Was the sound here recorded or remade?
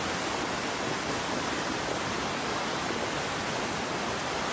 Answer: recorded